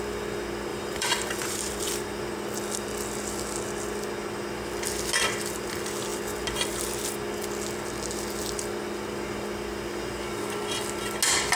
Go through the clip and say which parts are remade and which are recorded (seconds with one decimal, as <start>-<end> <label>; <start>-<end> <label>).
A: 0.0-0.7 recorded; 0.7-2.3 remade; 2.3-11.6 recorded